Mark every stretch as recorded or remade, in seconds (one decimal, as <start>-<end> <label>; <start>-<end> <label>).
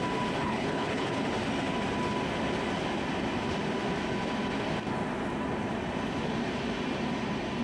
0.0-0.4 recorded; 0.4-1.2 remade; 1.2-7.6 recorded